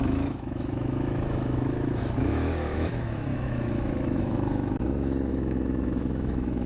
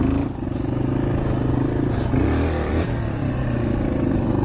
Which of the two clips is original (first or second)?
second